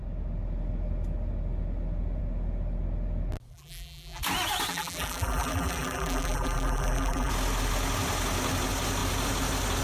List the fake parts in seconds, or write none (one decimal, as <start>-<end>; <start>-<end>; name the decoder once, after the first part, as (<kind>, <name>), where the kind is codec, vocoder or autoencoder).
3.5-4.2 (vocoder, BigVGAN v2); 4.7-7.3